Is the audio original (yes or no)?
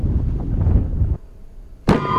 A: no